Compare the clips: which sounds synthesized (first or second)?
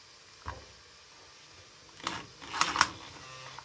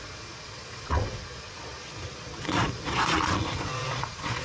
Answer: second